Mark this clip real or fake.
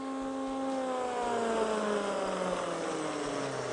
real